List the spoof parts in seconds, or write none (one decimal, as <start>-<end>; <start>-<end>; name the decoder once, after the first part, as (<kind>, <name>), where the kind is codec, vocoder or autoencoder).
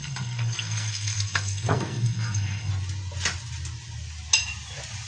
0.0-2.7 (codec, SNAC)